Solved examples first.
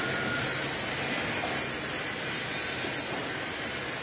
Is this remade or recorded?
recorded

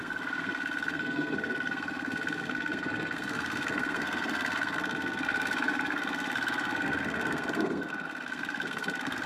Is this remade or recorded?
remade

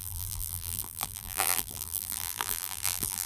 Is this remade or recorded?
remade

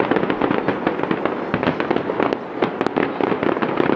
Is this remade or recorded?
recorded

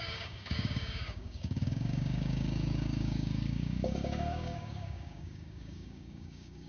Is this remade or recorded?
remade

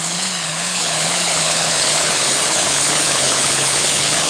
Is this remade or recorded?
remade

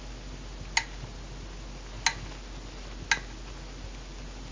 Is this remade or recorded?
recorded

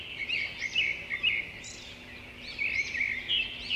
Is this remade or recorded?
recorded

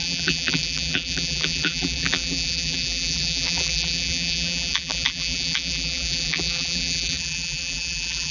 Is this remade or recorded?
remade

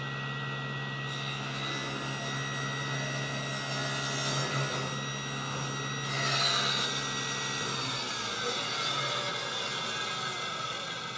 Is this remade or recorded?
recorded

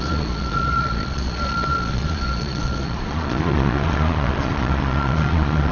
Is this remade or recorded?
remade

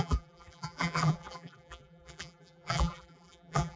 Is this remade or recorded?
remade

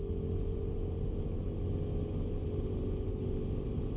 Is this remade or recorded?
recorded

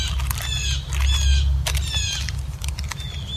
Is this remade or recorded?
recorded